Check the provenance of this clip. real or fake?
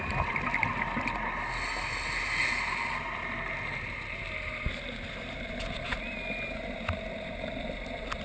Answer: real